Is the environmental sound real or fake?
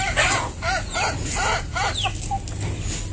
real